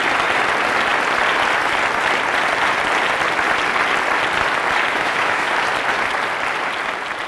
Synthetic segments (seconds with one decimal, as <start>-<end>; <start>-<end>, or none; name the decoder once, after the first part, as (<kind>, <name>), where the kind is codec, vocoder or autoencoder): 4.9-5.5 (autoencoder, DAC-VAE)